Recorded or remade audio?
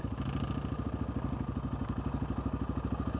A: recorded